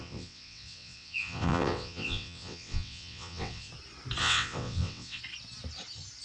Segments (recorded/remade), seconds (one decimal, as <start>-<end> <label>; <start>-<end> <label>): 0.0-3.7 remade; 3.7-4.2 recorded; 4.2-5.2 remade; 5.2-6.2 recorded